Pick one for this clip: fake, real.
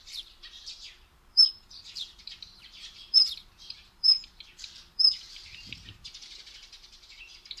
fake